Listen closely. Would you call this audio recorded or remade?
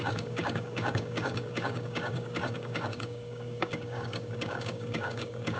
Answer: remade